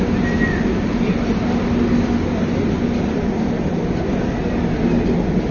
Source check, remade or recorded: recorded